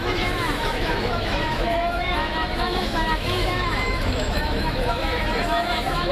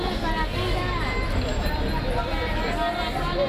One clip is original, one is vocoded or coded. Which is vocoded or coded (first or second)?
first